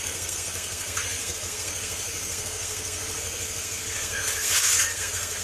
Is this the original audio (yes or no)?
no